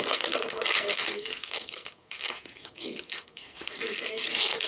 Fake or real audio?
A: fake